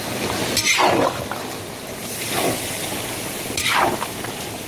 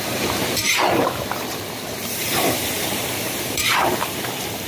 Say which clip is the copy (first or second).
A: second